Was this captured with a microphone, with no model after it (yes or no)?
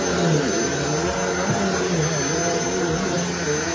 yes